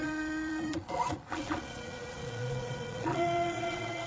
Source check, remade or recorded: remade